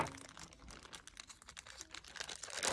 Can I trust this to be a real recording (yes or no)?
yes